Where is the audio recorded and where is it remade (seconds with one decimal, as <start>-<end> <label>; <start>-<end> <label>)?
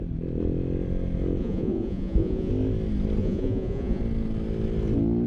0.0-1.4 recorded; 1.4-2.5 remade; 2.5-3.2 recorded; 3.2-4.0 remade; 4.0-5.3 recorded